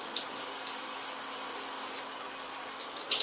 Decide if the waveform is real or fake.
real